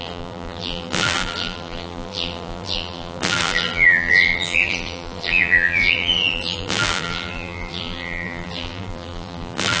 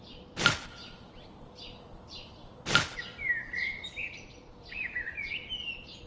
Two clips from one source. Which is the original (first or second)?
second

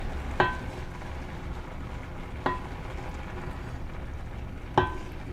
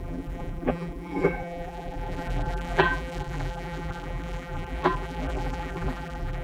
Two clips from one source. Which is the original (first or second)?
first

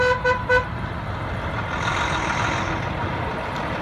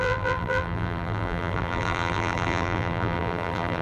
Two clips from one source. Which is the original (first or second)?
first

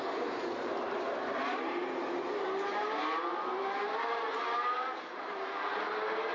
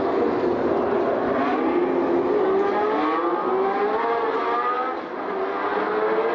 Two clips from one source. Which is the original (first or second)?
second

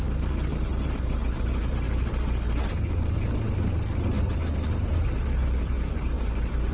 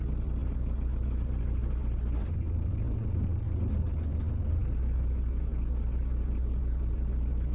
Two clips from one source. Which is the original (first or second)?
second